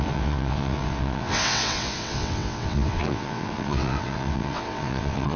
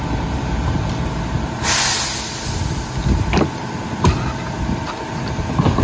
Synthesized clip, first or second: first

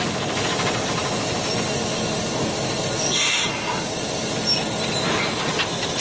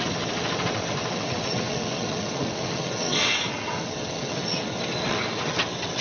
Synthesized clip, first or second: second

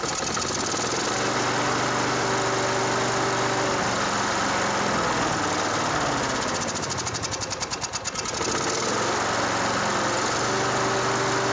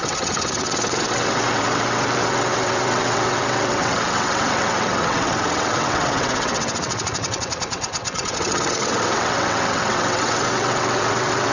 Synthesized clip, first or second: second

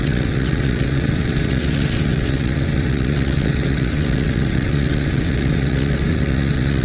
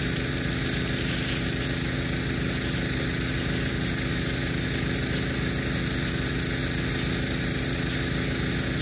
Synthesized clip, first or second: first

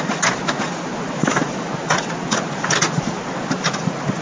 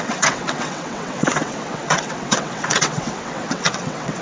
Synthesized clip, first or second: second